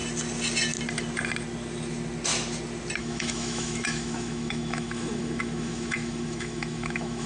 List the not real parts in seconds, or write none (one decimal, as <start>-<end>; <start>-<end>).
3.0-7.3